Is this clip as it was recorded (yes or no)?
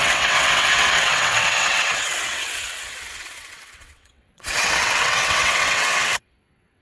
no